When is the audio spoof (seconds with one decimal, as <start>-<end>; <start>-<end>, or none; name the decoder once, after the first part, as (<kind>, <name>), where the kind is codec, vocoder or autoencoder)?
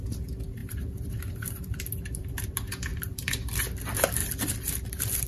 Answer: 0.6-2.5 (vocoder, BigVGAN v2); 2.9-3.6; 4.2-5.3